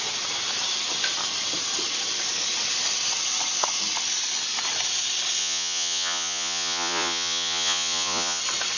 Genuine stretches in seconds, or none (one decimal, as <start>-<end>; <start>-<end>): 0.0-5.4; 8.4-8.8